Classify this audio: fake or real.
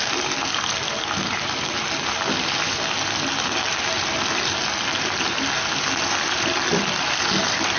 real